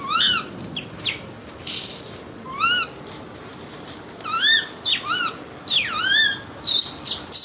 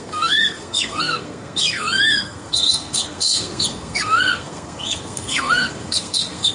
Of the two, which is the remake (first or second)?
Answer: second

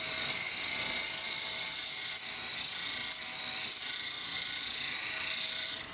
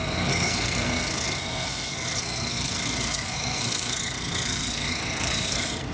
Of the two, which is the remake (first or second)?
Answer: second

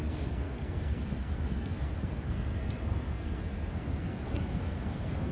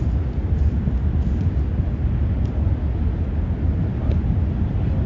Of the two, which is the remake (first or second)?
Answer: first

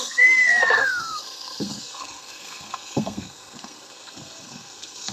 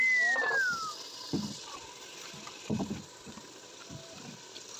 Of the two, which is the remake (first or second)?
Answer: first